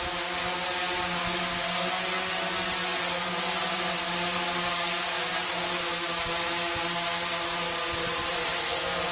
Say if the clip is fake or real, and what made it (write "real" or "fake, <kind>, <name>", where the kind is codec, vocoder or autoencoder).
real